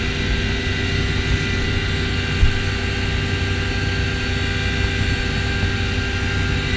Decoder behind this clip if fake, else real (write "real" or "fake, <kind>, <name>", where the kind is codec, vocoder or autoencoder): real